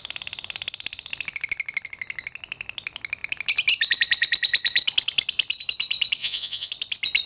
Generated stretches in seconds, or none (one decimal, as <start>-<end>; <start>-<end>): 6.2-6.7